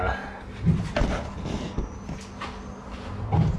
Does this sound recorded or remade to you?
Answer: recorded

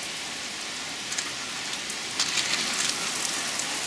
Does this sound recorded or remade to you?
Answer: recorded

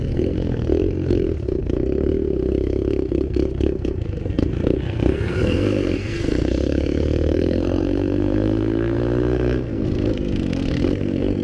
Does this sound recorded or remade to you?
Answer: remade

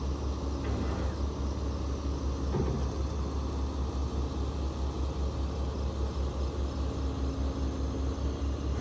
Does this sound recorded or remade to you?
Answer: recorded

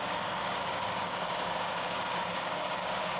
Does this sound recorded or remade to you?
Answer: remade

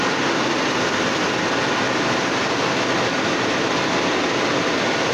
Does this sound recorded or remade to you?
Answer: recorded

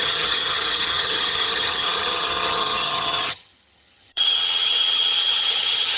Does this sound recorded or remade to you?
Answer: remade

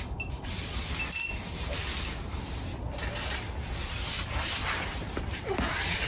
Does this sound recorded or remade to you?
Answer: remade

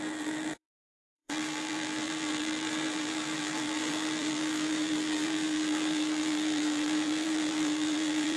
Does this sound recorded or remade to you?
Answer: remade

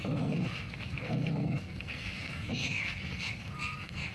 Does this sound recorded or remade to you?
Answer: remade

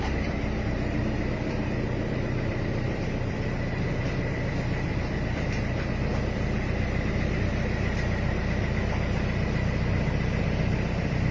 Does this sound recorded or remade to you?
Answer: remade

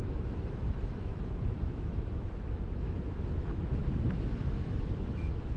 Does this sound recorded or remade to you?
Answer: remade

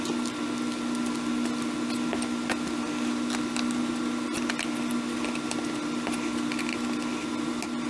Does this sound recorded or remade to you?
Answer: recorded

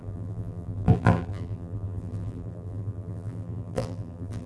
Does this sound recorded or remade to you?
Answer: remade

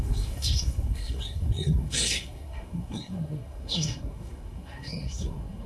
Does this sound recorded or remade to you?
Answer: remade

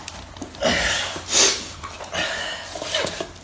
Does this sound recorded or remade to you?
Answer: recorded